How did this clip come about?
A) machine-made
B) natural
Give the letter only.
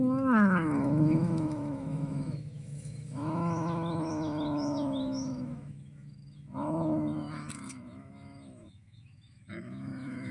A